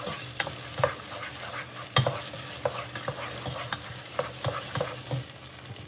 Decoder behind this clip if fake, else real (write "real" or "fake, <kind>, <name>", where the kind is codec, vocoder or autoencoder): real